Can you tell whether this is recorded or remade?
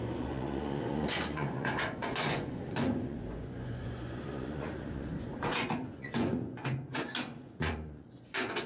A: remade